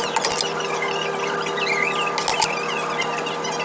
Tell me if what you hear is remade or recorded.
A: recorded